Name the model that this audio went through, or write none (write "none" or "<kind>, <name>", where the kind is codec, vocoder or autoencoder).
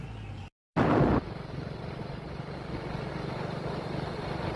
none